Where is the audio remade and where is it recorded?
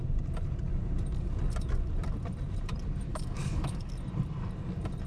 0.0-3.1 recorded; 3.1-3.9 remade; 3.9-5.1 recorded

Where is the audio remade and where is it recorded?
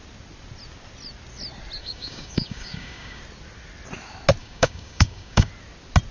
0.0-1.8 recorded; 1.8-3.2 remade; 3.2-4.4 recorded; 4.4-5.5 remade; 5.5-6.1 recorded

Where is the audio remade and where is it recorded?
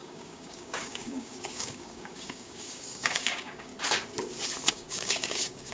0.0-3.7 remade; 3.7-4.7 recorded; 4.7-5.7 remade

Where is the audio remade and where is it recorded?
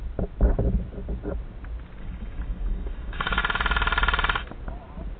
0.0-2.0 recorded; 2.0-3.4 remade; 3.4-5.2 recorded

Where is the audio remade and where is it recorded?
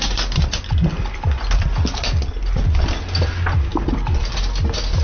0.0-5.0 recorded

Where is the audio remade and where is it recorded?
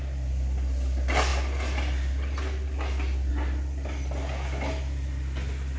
0.0-5.8 recorded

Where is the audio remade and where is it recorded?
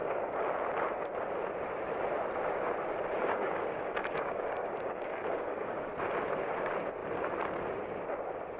0.0-0.5 remade; 0.5-3.2 recorded; 3.2-5.9 remade; 5.9-8.6 recorded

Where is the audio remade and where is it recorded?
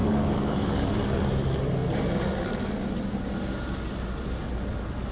0.0-1.2 remade; 1.2-5.1 recorded